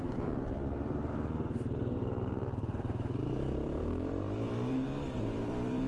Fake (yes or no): yes